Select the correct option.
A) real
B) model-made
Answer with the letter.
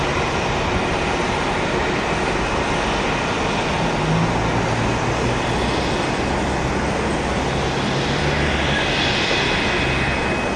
A